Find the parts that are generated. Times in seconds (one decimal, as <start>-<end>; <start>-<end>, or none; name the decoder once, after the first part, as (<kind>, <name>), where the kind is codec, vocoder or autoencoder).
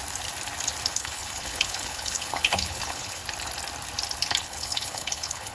0.9-3.2 (codec, HILCodec); 4.4-5.5